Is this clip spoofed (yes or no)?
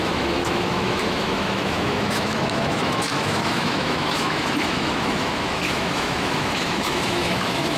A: yes